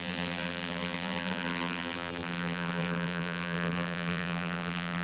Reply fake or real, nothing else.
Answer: fake